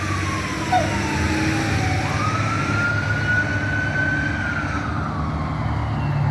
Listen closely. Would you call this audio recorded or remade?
recorded